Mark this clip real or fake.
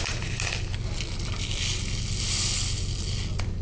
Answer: real